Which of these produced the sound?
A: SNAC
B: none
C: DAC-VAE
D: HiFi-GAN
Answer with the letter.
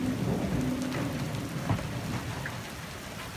B